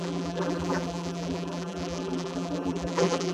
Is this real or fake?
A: fake